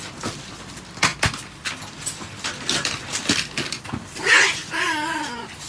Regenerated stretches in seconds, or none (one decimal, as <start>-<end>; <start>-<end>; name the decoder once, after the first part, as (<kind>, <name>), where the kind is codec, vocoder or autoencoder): none